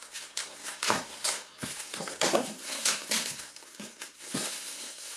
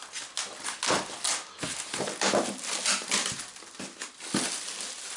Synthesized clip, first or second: first